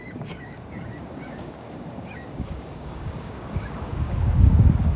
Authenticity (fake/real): fake